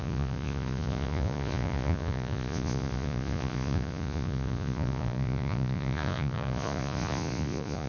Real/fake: fake